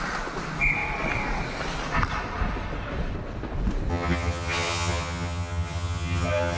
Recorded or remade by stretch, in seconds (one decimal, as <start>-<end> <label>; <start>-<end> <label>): 0.0-3.9 recorded; 3.9-6.6 remade